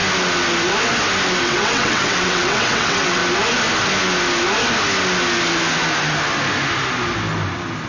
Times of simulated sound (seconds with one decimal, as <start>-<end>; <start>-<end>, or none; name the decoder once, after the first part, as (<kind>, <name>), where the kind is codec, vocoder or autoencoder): 1.4-3.2 (vocoder, WaveNeXt)